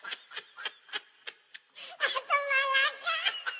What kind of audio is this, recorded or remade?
recorded